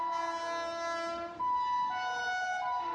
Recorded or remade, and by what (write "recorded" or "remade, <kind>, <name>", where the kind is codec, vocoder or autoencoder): recorded